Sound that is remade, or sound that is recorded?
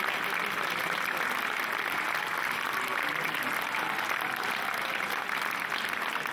recorded